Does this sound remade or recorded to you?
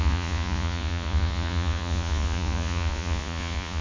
remade